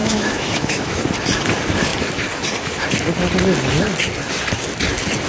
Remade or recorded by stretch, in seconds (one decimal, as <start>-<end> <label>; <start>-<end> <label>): 0.0-1.0 remade; 1.0-5.3 recorded